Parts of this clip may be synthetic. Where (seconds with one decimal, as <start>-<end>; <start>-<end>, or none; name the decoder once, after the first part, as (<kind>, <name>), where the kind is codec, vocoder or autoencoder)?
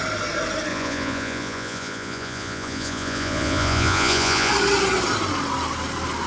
0.7-4.5 (vocoder, Vocos)